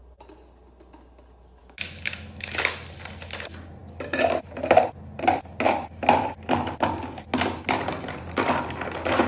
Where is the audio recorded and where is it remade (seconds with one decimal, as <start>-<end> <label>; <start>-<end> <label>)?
0.0-1.6 recorded; 1.6-2.6 remade; 2.6-9.3 recorded